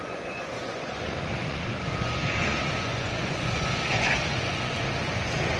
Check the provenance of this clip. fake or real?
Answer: fake